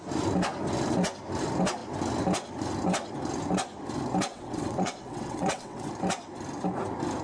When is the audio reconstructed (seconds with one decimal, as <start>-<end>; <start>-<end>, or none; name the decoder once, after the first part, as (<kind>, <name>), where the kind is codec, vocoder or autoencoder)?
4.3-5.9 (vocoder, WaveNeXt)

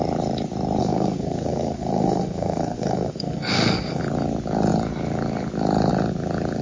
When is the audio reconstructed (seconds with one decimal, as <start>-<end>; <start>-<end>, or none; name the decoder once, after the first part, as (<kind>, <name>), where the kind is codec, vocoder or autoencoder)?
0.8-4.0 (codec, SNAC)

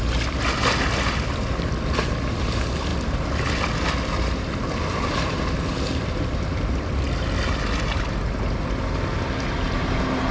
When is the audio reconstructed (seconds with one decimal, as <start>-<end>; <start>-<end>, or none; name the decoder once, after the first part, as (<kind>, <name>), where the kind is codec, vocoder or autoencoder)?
none

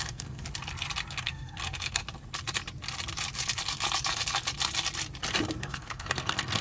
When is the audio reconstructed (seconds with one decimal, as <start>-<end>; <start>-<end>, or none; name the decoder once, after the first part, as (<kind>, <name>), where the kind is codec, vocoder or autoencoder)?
0.0-0.4 (codec, SNAC); 1.2-2.0; 5.6-6.6

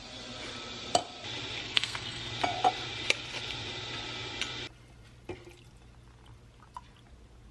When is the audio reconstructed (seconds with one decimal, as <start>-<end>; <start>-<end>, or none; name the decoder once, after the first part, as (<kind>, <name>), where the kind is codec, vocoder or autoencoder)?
1.6-2.3 (codec, SNAC)

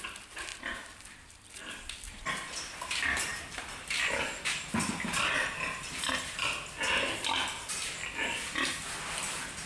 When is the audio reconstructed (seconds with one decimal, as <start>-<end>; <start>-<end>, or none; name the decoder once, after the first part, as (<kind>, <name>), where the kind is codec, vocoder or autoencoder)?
3.3-4.1 (vocoder, BigVGAN v2)